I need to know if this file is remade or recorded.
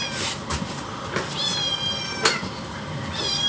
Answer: recorded